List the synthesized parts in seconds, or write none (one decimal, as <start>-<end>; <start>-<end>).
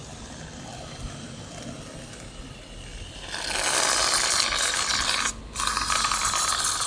2.9-3.4